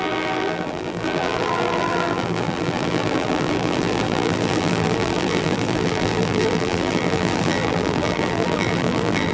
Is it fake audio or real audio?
fake